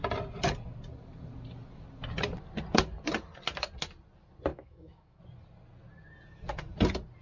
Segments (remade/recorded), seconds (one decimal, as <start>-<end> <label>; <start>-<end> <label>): 0.0-4.5 recorded; 4.5-5.2 remade; 5.2-7.2 recorded